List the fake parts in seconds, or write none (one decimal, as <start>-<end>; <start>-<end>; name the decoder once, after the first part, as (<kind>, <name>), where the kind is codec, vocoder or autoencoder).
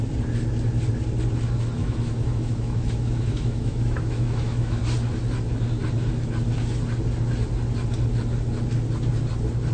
1.8-4.8 (autoencoder, DAC-VAE)